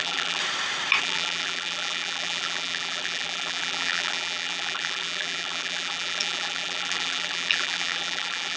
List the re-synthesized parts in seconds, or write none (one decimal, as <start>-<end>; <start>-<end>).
0.0-0.4; 1.0-8.6